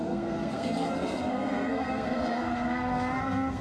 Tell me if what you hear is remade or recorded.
remade